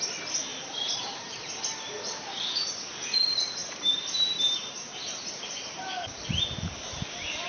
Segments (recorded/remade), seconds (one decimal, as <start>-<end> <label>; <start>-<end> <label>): 0.0-0.5 recorded; 0.5-1.6 remade; 1.6-3.6 recorded; 3.6-6.4 remade; 6.4-7.5 recorded